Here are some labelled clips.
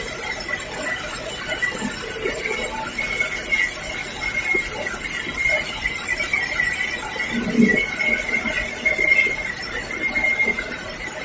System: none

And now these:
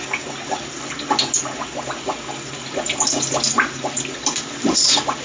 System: none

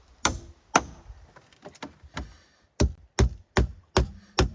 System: none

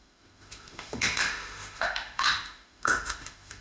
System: autoencoder, DAC-VAE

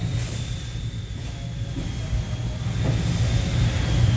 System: none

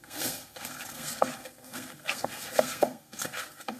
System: codec, SNAC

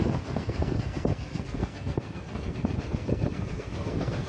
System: codec, SNAC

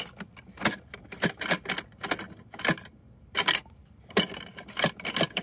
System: none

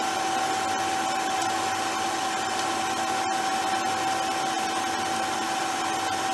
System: none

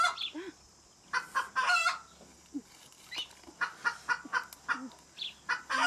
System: none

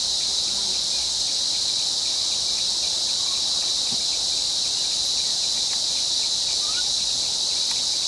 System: none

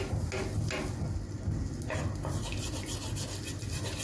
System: none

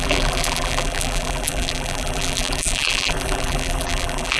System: vocoder, BigVGAN v2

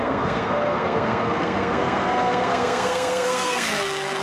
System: codec, SNAC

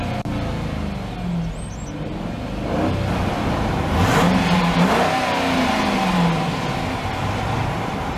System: none